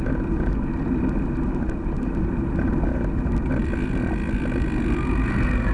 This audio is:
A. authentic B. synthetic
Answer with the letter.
A